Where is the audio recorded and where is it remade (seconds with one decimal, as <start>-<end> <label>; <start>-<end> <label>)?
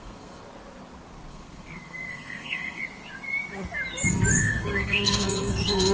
0.0-0.4 remade; 0.4-1.3 recorded; 1.3-2.8 remade; 2.8-4.4 recorded; 4.4-5.9 remade